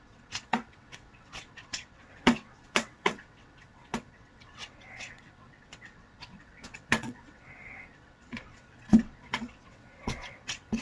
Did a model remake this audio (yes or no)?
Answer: yes